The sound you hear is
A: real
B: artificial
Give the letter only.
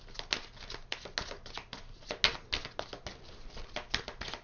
A